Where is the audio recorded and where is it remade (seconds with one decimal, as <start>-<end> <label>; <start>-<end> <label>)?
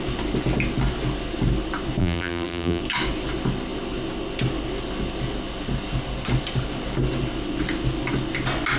0.0-2.0 recorded; 2.0-2.8 remade; 2.8-8.8 recorded